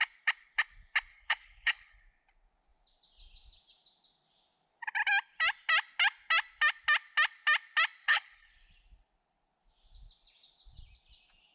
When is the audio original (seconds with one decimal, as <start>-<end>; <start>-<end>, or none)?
0.0-1.1; 2.0-8.0; 8.5-11.5